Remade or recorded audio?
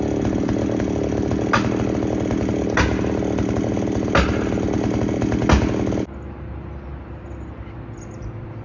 recorded